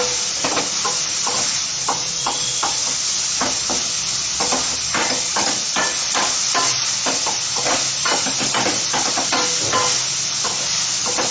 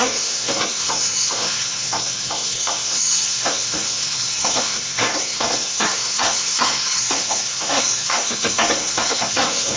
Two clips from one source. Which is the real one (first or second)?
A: first